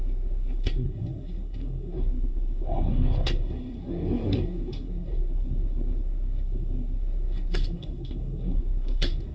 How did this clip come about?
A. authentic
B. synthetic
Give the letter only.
B